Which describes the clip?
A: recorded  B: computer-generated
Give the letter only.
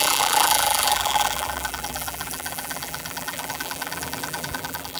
B